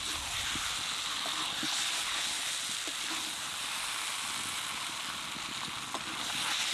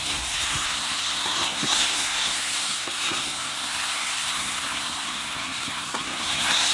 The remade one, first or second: second